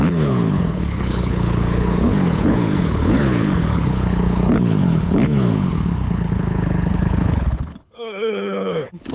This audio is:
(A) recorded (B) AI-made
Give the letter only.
B